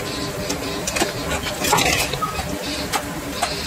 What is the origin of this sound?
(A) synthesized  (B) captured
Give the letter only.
A